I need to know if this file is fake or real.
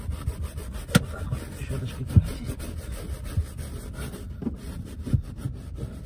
real